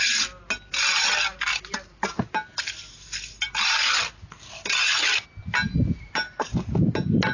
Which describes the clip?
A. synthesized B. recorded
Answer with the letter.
B